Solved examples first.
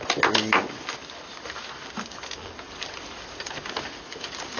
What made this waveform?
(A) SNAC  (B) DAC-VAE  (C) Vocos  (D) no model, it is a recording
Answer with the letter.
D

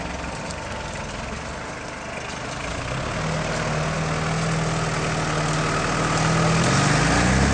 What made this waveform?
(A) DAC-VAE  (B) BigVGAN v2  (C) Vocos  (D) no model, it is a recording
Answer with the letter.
D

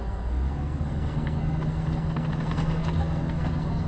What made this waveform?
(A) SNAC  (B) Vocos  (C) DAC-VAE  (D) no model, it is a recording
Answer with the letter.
A